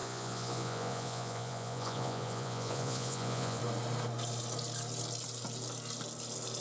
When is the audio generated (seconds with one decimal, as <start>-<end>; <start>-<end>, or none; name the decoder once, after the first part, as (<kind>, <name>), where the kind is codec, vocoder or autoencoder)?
0.0-3.6 (vocoder, Vocos)